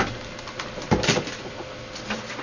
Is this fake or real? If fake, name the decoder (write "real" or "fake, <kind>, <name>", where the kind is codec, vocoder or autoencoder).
real